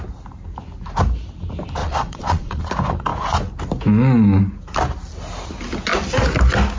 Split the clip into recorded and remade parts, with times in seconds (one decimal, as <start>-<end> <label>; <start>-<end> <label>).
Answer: 0.0-1.8 recorded; 1.8-2.6 remade; 2.6-6.8 recorded